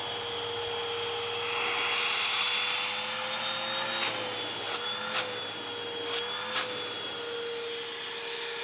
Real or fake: real